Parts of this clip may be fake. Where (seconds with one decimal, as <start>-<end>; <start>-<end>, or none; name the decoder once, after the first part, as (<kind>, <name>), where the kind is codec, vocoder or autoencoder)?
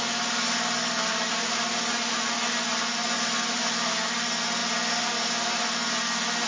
none